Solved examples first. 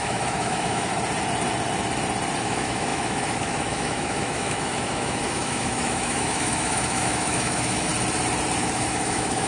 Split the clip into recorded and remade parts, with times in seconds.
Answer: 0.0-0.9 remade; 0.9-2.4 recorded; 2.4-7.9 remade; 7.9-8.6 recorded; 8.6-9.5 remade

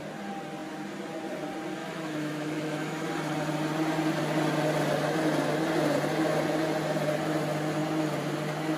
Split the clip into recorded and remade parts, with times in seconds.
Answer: 0.0-1.8 recorded; 1.8-3.1 remade; 3.1-8.8 recorded

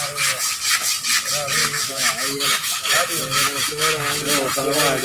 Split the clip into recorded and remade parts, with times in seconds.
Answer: 0.0-1.6 recorded; 1.6-4.3 remade; 4.3-5.0 recorded

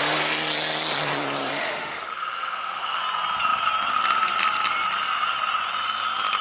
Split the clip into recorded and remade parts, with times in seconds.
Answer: 0.0-1.5 recorded; 1.5-3.0 remade; 3.0-6.4 recorded